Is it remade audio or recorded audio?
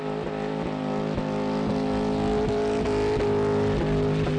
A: recorded